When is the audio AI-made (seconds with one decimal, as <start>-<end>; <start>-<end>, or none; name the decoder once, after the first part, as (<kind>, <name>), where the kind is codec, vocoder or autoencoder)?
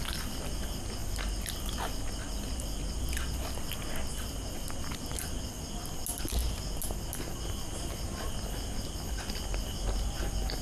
none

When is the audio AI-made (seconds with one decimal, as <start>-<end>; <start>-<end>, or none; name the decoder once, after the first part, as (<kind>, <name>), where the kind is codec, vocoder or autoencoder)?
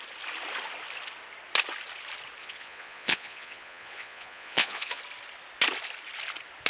2.4-5.0 (vocoder, Vocos)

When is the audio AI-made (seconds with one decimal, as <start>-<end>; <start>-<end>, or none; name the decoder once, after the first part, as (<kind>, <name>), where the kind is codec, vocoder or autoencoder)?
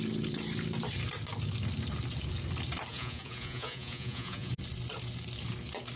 2.9-4.5 (vocoder, Vocos)